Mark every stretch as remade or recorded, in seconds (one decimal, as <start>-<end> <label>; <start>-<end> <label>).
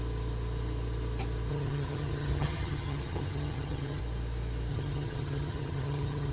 0.0-1.5 recorded; 1.5-4.0 remade; 4.0-4.7 recorded; 4.7-6.3 remade